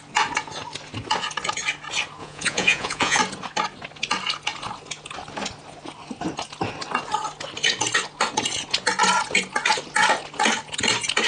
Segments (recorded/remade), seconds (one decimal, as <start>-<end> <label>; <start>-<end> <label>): 0.0-2.2 recorded; 2.2-3.2 remade; 3.2-11.3 recorded